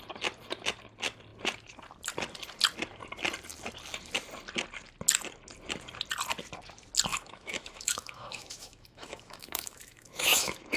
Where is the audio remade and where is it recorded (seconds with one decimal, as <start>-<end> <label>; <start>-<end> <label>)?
0.0-7.1 recorded; 7.1-10.8 remade